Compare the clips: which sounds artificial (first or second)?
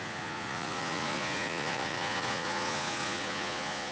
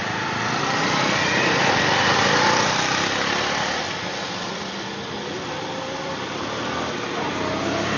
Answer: first